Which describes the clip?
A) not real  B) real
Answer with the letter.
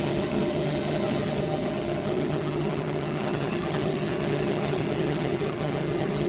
A